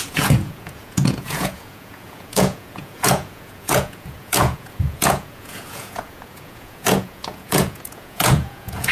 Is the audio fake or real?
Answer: fake